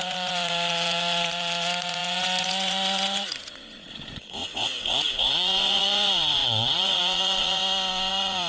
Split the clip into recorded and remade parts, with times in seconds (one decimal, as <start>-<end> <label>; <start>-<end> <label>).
0.0-7.6 remade; 7.6-8.1 recorded; 8.1-8.5 remade